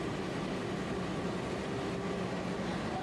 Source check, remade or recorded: recorded